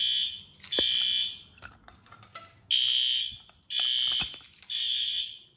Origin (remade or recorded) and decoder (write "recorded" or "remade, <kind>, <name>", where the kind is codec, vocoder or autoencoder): recorded